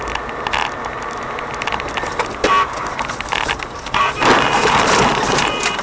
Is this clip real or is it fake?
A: real